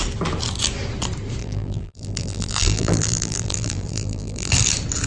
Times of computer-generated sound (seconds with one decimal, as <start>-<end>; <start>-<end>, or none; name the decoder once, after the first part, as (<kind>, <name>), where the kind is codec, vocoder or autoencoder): 1.4-4.5 (vocoder, BigVGAN v2)